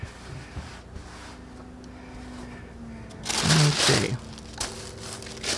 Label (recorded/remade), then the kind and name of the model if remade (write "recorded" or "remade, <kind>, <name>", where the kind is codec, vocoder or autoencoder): recorded